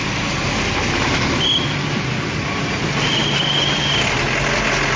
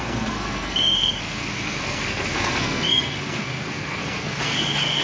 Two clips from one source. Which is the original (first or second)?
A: first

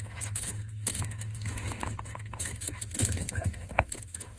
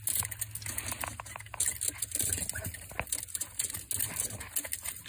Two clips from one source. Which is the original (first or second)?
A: second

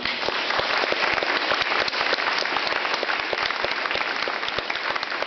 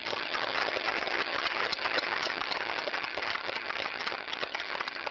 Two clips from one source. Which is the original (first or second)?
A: first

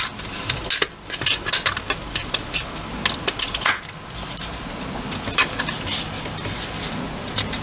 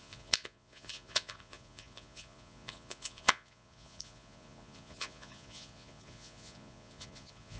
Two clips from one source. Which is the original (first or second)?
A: first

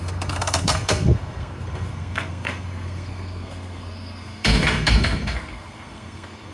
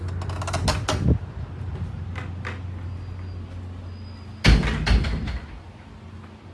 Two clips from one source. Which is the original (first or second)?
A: second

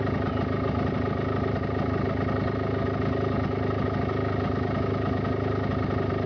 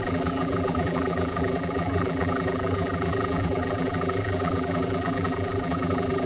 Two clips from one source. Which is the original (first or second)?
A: first